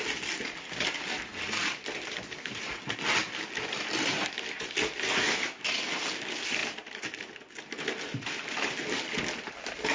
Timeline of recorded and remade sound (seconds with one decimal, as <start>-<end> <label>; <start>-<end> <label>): 0.0-9.9 recorded